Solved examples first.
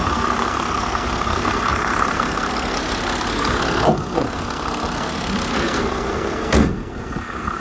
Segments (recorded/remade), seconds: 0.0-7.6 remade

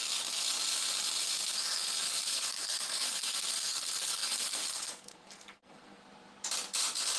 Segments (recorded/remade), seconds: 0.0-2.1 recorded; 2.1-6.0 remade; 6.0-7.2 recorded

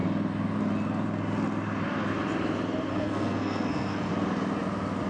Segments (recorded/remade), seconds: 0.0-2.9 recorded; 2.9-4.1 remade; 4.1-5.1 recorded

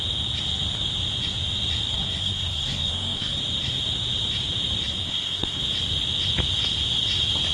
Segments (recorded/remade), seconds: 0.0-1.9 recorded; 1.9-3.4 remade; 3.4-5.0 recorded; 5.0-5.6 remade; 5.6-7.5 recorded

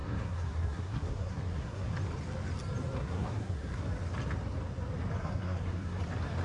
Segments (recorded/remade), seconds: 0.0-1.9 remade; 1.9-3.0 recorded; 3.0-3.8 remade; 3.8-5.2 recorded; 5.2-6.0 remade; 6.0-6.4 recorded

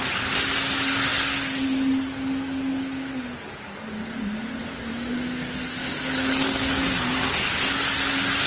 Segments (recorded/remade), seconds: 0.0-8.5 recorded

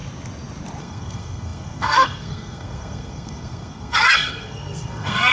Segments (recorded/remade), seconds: 0.0-0.8 recorded; 0.8-5.3 remade

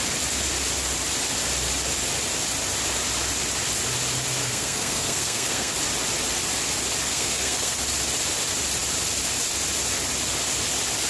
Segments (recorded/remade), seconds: 0.0-4.4 recorded; 4.4-5.7 remade; 5.7-7.1 recorded; 7.1-7.8 remade; 7.8-11.1 recorded